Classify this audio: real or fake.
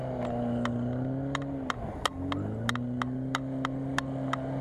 real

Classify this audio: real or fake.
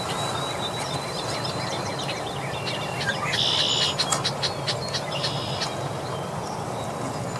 real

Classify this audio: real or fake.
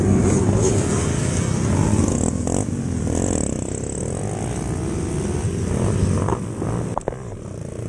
real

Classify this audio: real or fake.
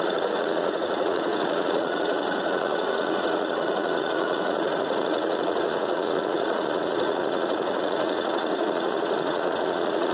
fake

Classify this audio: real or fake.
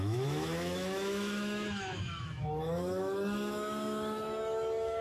fake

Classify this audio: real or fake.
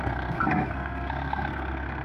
fake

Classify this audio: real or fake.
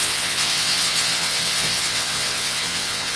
fake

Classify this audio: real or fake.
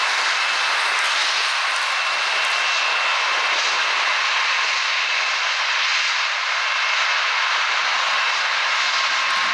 real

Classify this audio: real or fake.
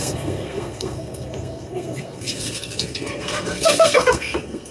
fake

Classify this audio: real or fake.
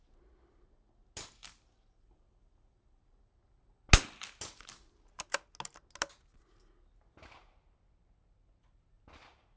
real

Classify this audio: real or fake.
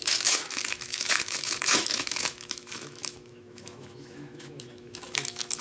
fake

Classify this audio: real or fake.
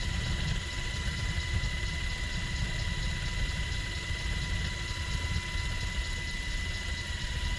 real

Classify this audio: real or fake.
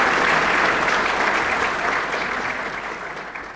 real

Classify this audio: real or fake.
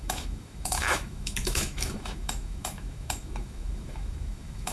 fake